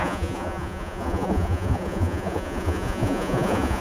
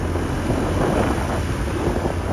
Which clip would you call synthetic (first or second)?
first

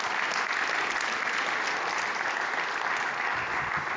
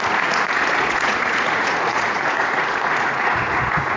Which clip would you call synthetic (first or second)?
second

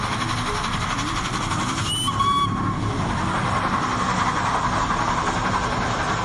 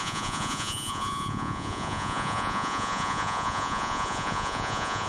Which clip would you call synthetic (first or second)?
second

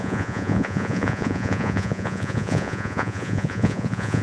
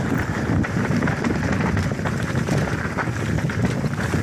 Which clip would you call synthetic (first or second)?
first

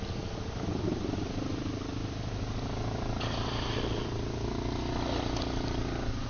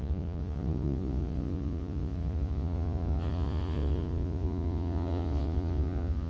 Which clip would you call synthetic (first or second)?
second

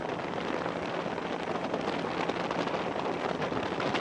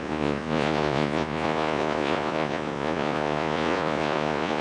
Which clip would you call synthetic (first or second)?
second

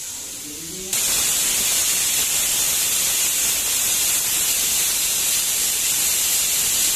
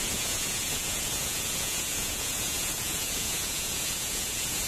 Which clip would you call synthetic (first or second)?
second